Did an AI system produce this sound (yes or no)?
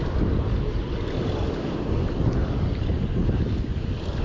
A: no